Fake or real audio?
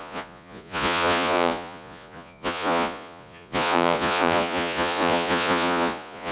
fake